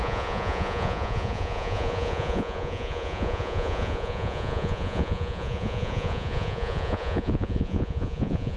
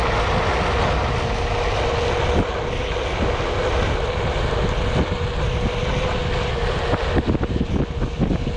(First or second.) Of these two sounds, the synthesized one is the first